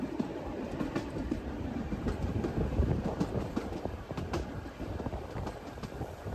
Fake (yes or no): yes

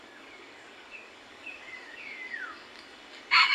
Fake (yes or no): yes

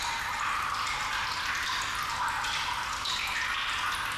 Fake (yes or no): no